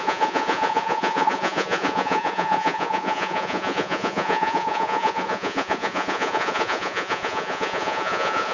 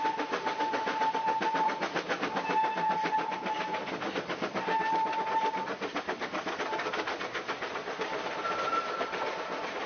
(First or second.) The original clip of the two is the second